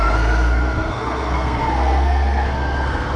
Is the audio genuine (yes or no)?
no